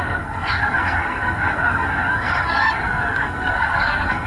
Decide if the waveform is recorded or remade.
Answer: remade